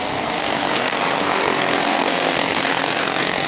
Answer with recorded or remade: remade